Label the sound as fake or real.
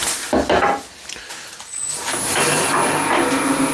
real